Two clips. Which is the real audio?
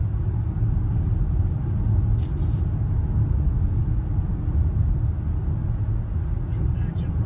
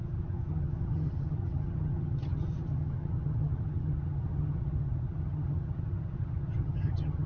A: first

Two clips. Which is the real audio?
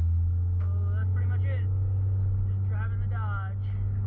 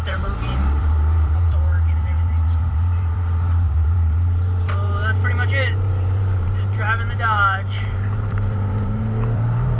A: first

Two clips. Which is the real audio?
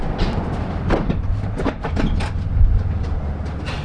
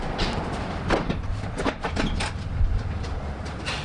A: first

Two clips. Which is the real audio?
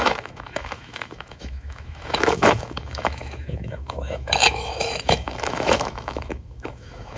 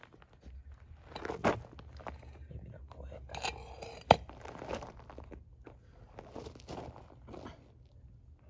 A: second